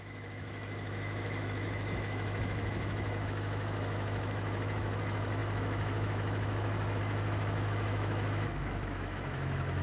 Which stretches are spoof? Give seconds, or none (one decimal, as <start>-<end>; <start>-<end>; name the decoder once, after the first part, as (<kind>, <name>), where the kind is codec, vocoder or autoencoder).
0.0-9.8 (autoencoder, DAC-VAE)